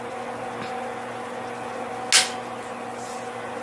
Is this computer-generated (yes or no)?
no